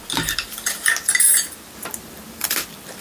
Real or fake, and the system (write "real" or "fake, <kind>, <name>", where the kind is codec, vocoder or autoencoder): fake, vocoder, BigVGAN v2